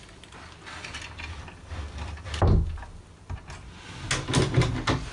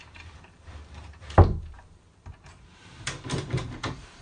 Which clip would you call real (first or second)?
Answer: first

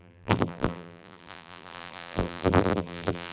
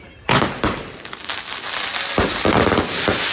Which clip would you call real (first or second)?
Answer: second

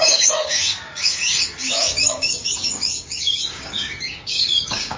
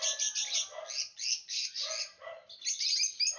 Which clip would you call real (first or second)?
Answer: second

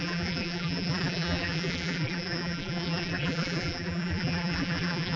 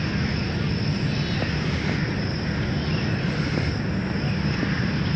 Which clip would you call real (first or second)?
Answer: second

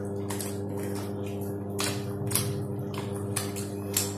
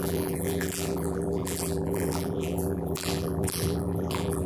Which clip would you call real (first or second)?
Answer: first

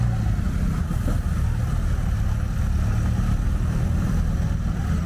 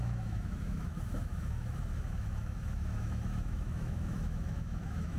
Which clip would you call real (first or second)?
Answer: first